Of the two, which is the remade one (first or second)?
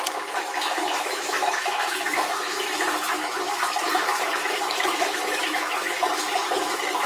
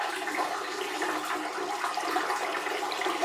first